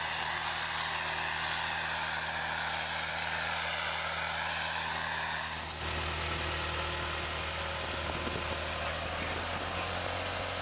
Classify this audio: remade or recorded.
recorded